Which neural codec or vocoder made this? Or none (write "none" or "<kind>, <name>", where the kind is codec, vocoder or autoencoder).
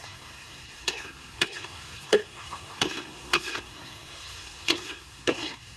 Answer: codec, SNAC